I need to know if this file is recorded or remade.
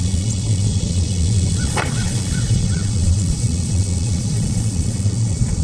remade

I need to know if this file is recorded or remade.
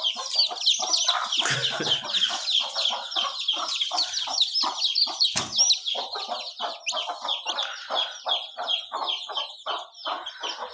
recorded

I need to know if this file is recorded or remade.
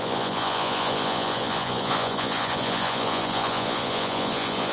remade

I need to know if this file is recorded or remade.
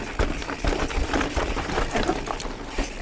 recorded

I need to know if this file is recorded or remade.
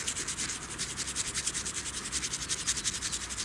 recorded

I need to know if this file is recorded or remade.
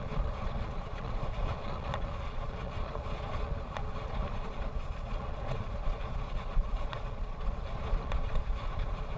remade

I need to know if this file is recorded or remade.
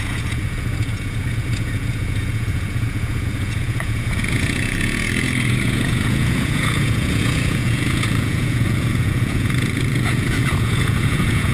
remade